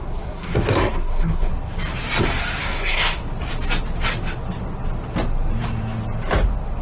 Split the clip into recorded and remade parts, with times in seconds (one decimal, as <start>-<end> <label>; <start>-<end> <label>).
0.0-1.5 remade; 1.5-2.6 recorded; 2.6-3.2 remade; 3.2-6.8 recorded